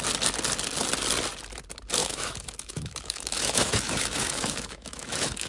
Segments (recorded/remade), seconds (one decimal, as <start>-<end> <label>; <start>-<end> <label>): 0.0-2.0 recorded; 2.0-5.5 remade